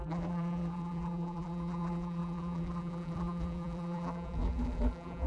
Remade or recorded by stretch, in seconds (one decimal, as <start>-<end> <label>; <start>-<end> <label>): 0.0-5.3 remade